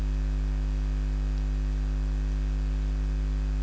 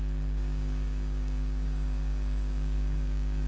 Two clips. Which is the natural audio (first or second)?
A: first